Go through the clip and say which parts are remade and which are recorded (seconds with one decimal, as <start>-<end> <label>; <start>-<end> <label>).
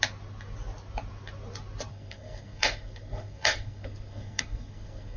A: 0.0-1.9 recorded; 1.9-5.2 remade